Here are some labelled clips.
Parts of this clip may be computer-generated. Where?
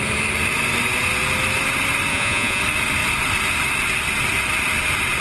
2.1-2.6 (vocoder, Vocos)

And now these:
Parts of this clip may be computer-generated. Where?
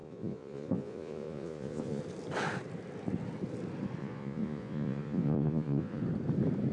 0.0-2.0 (vocoder, Vocos); 4.0-6.0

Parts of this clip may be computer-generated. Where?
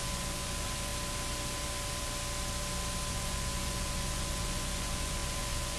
0.0-0.9 (vocoder, Vocos); 3.1-5.8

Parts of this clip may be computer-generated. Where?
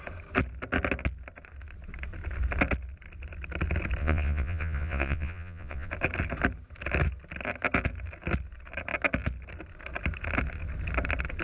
4.0-5.9 (vocoder, Vocos)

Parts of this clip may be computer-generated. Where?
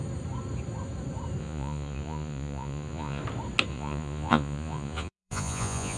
1.4-3.2 (vocoder, Vocos); 3.7-6.0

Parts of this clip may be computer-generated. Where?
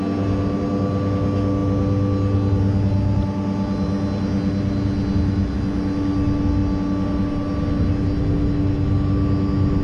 none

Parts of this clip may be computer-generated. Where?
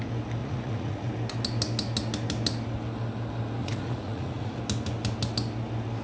0.4-1.1 (vocoder, Vocos); 3.6-4.6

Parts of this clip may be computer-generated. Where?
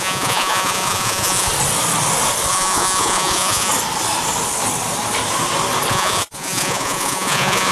0.0-1.5 (vocoder, Vocos); 2.5-3.7; 5.9-7.7